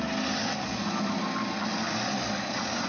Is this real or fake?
real